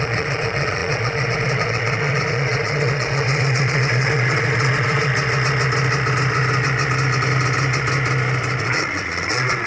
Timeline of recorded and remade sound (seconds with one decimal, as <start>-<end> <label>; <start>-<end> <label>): 0.0-5.1 remade; 5.1-8.6 recorded; 8.6-9.7 remade